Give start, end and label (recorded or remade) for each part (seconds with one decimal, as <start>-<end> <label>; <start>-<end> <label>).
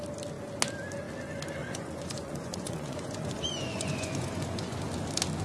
0.0-1.6 recorded; 1.6-4.8 remade; 4.8-5.4 recorded